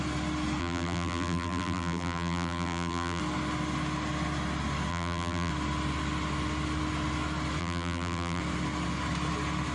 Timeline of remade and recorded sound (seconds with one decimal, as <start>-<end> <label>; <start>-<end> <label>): 0.0-0.6 recorded; 0.6-3.2 remade; 3.2-4.9 recorded; 4.9-5.5 remade; 5.5-7.6 recorded; 7.6-8.4 remade; 8.4-9.7 recorded